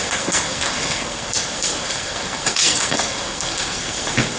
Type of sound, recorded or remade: remade